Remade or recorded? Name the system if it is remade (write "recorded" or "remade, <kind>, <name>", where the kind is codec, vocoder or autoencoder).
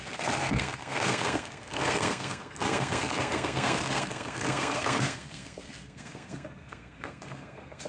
remade, codec, SNAC